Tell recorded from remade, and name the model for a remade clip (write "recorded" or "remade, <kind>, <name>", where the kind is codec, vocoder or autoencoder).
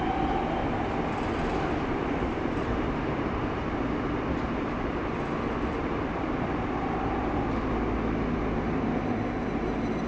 recorded